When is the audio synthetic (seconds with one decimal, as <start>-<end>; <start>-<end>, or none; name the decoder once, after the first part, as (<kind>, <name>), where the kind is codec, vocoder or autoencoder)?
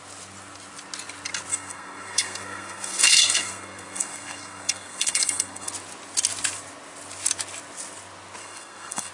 1.5-5.7 (codec, SNAC); 8.4-9.1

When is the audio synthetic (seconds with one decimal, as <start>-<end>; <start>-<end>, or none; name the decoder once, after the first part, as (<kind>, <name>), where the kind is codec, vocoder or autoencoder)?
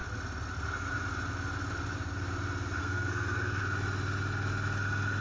2.8-3.6 (codec, SNAC)